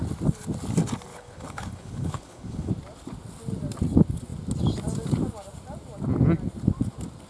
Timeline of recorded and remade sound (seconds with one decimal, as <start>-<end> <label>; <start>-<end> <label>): 0.0-1.1 recorded; 1.1-2.7 remade; 2.7-7.3 recorded